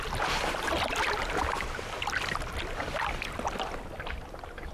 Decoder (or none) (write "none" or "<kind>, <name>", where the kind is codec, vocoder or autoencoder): none